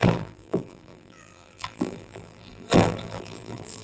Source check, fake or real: fake